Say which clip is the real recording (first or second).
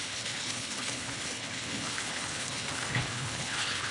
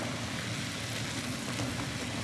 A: second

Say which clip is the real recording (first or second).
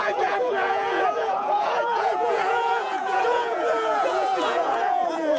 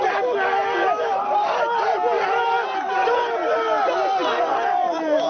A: second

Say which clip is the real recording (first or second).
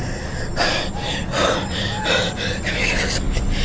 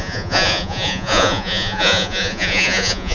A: first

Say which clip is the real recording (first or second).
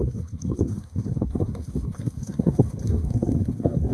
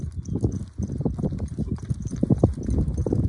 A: second